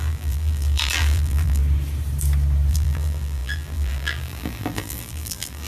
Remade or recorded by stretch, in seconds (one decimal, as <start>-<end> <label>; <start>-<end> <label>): 0.0-1.6 remade; 1.6-2.7 recorded; 2.7-5.7 remade